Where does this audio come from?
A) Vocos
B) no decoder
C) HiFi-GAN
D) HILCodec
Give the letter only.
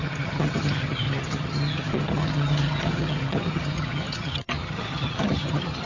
C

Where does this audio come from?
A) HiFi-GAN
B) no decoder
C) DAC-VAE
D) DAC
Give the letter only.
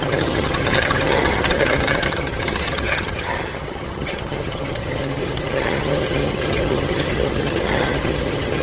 A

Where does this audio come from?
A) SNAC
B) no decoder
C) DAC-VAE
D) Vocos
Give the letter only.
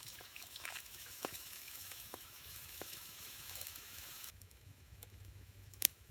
C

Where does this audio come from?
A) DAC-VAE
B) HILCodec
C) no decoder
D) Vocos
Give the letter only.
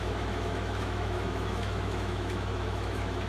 A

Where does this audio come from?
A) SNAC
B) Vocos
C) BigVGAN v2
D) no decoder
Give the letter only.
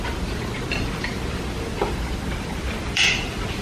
C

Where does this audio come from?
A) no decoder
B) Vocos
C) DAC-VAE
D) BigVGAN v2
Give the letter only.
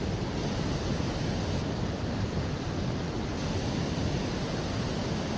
A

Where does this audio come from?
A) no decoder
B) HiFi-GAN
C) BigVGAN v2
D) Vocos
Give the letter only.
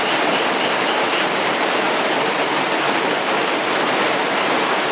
A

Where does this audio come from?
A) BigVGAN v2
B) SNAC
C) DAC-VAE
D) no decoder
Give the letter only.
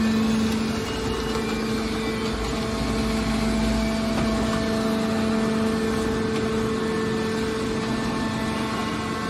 D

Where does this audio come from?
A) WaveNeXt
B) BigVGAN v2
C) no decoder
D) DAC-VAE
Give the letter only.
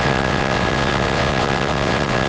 A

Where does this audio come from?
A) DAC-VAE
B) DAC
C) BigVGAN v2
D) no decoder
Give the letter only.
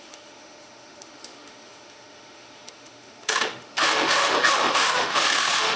A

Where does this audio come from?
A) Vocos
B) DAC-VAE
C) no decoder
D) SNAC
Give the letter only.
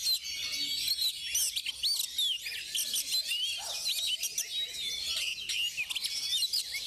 C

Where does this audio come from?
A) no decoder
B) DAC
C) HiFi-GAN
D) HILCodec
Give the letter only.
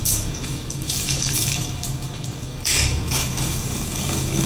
B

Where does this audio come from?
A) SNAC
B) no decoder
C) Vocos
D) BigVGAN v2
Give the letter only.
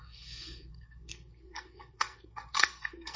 A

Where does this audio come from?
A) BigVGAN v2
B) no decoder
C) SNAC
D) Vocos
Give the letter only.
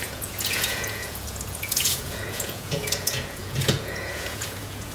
D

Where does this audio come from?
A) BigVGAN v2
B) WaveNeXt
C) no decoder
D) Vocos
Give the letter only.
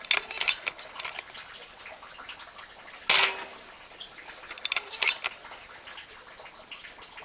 C